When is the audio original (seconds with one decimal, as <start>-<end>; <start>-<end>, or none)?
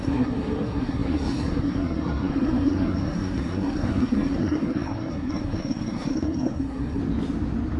7.0-7.8